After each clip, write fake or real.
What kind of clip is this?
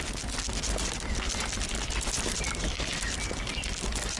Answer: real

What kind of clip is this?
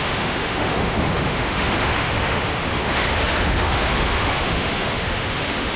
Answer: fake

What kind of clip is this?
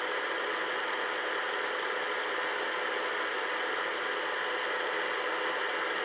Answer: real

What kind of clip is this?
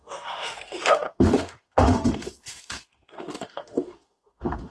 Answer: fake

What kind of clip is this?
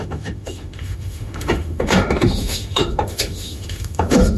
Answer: fake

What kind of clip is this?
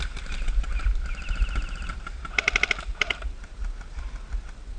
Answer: real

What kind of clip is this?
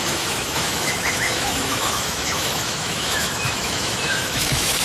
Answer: fake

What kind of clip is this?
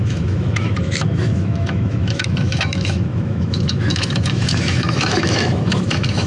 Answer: fake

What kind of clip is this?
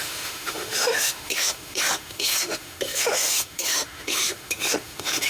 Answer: fake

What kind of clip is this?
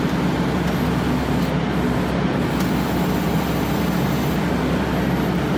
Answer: real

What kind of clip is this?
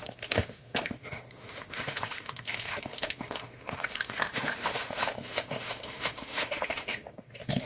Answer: fake